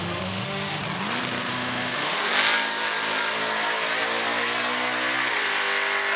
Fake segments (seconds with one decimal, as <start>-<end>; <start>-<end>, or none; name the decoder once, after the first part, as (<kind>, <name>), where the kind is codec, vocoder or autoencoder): 0.0-0.8 (autoencoder, DAC-VAE); 1.5-2.3